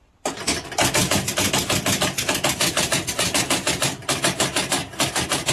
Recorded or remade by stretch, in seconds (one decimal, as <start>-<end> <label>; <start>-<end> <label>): 0.0-5.5 recorded